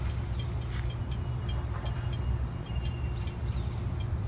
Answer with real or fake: real